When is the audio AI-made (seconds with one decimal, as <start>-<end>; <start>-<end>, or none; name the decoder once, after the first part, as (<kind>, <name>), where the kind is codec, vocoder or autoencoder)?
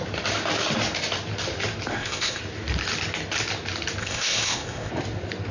1.9-2.4 (codec, ZipCodec); 4.0-4.9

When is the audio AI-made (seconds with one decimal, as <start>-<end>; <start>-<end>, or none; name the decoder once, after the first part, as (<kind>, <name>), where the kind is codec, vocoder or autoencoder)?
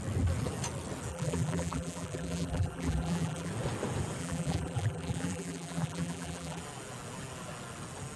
1.1-3.5 (vocoder, BigVGAN v2); 4.2-6.6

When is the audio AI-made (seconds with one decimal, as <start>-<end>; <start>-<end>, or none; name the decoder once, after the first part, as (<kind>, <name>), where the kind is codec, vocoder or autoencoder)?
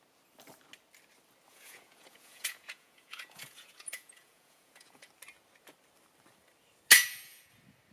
1.5-5.1 (vocoder, Vocos); 7.0-7.5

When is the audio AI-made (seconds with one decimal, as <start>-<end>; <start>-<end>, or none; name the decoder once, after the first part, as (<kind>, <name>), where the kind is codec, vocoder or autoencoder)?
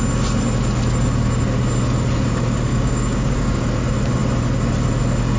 2.7-3.6 (codec, DAC)